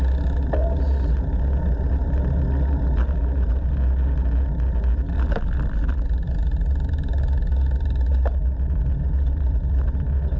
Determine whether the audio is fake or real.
real